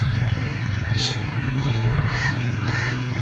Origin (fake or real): fake